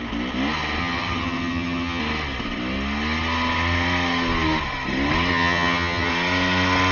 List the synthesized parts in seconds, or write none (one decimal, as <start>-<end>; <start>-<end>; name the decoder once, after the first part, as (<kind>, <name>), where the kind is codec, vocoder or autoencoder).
0.8-2.0 (vocoder, HiFi-GAN); 5.3-6.1